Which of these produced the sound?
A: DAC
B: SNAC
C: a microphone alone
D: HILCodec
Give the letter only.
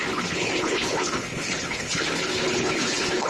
D